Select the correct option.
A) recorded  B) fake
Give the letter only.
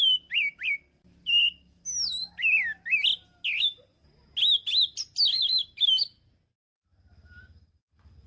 A